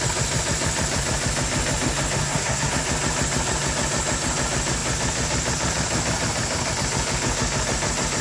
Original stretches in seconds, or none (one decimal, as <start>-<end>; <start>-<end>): 0.0-2.2; 2.7-8.2